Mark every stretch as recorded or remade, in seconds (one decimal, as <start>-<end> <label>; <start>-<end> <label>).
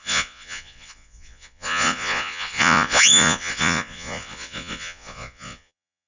0.0-6.1 remade